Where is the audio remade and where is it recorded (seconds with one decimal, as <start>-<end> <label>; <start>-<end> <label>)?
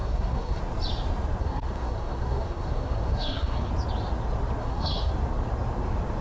0.0-0.6 remade; 0.6-1.4 recorded; 1.4-3.7 remade; 3.7-4.6 recorded; 4.6-5.1 remade; 5.1-6.2 recorded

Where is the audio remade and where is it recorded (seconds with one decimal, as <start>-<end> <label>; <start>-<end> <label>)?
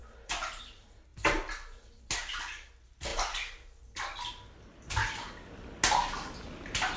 0.0-7.0 recorded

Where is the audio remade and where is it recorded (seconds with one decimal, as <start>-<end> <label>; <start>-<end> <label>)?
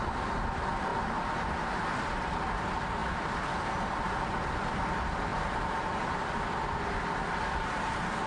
0.0-8.3 recorded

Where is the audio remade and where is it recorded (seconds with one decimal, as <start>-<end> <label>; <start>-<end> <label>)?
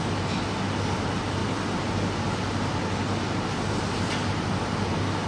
0.0-5.3 recorded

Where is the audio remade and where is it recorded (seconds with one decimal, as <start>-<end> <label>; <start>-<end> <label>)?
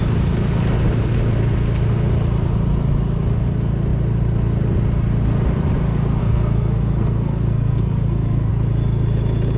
0.0-6.2 recorded; 6.2-8.5 remade; 8.5-9.6 recorded